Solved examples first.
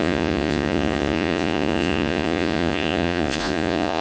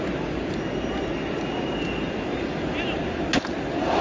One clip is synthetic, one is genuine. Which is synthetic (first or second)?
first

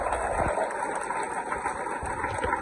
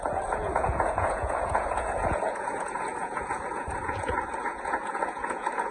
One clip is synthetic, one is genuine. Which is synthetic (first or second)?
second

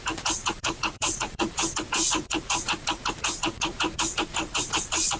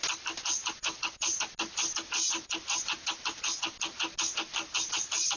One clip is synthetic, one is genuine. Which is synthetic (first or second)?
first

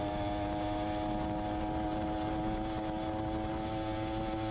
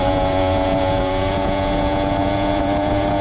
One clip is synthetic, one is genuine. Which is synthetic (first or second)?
second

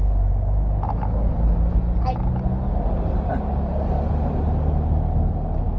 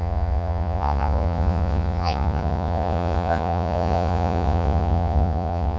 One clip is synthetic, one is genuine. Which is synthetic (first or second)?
second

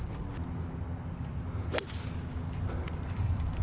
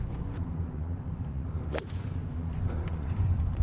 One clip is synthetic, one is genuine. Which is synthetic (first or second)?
second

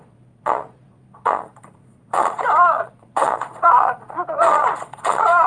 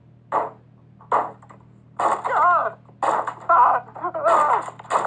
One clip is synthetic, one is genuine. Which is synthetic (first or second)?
first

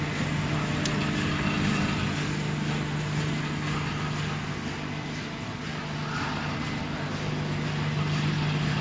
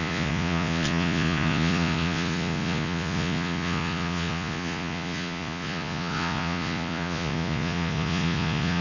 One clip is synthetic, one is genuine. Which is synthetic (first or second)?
second